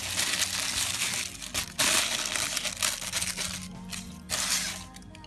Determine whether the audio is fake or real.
real